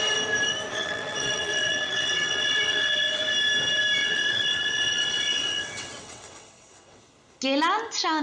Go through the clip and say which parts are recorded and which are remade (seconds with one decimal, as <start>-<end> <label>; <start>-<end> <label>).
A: 0.0-0.7 recorded; 0.7-3.2 remade; 3.2-4.0 recorded; 4.0-7.0 remade; 7.0-8.2 recorded